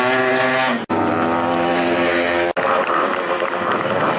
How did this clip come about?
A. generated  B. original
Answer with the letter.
B